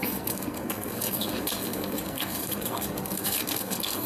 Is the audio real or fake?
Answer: fake